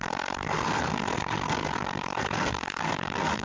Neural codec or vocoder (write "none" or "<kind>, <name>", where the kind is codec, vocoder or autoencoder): codec, SNAC